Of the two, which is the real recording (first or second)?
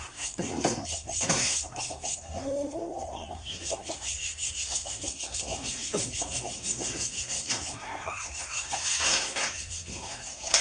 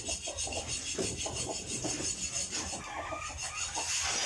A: second